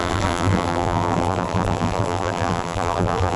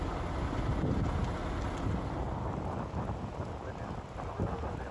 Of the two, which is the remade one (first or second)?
first